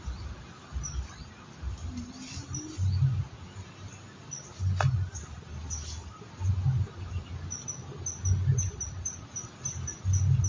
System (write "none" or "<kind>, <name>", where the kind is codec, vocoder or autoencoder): none